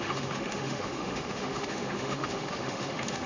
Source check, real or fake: fake